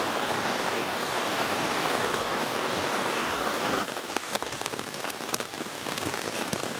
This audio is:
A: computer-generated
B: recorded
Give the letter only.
A